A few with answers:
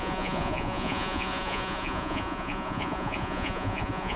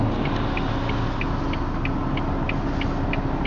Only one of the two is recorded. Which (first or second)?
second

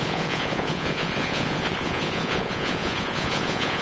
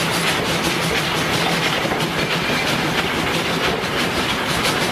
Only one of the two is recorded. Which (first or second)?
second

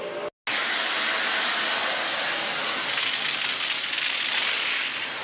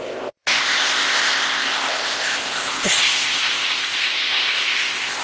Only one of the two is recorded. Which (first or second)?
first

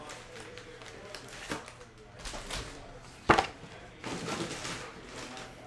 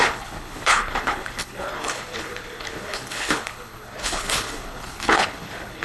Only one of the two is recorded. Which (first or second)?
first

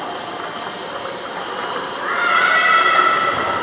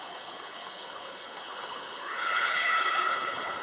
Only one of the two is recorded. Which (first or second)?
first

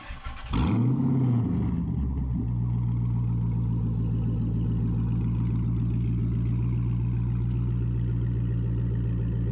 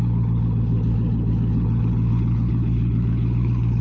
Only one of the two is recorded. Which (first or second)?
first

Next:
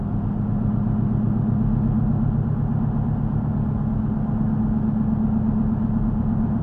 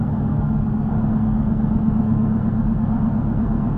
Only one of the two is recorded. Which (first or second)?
first